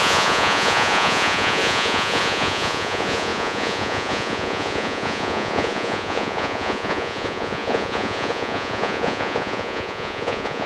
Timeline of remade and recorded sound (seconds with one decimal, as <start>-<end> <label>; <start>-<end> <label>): 0.0-10.7 remade